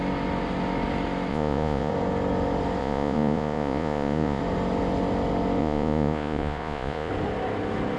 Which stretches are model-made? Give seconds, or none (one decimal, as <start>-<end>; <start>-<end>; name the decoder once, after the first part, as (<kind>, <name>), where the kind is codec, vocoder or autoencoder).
1.3-1.9 (vocoder, Vocos); 2.8-4.4; 5.6-7.1

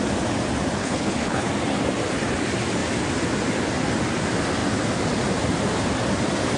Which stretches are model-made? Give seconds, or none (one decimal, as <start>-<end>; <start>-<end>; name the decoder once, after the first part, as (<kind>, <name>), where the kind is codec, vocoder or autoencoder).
0.8-1.5 (codec, HILCodec)

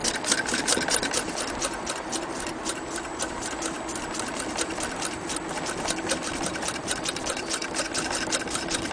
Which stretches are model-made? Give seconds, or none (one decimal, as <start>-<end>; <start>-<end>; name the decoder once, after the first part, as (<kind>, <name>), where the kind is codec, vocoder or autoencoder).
0.0-7.6 (vocoder, BigVGAN v2); 8.2-8.9